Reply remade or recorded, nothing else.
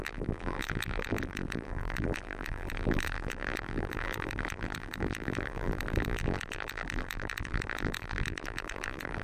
remade